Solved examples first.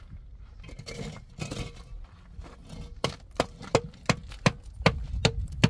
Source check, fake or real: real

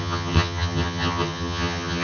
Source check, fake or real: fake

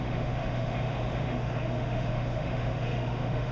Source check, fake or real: fake